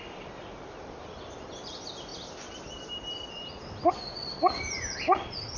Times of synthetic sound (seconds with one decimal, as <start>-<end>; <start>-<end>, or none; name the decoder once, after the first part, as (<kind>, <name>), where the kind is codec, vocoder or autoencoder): 0.0-2.1 (vocoder, BigVGAN v2); 3.9-5.6